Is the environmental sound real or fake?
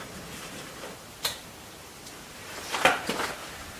fake